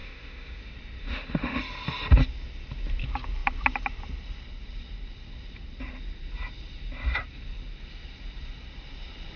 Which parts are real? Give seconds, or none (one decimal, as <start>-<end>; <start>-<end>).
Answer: 0.6-1.0; 1.6-9.4